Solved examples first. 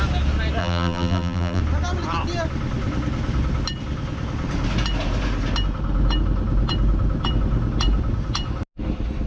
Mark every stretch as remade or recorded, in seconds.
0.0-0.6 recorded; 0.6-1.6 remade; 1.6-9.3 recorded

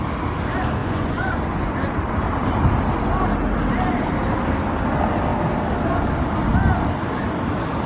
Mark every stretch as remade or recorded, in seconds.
0.0-0.8 recorded; 0.8-1.7 remade; 1.7-7.9 recorded

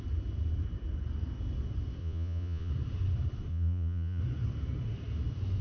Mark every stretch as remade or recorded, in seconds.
0.0-2.0 recorded; 2.0-2.7 remade; 2.7-3.5 recorded; 3.5-4.2 remade; 4.2-5.6 recorded

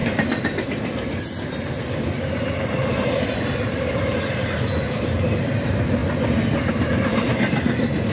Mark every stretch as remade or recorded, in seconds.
0.0-2.2 recorded; 2.2-6.0 remade; 6.0-6.7 recorded; 6.7-8.1 remade

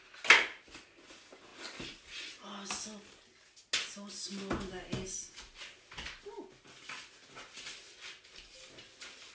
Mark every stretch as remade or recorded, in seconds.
0.0-9.3 recorded

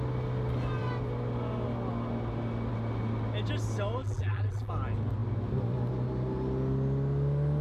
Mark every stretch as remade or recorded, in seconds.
0.0-4.0 recorded; 4.0-4.7 remade; 4.7-7.6 recorded